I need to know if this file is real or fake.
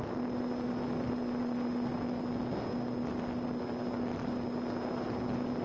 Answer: real